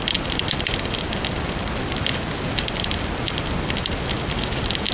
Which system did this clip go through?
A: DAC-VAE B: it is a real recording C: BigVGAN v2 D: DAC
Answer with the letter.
C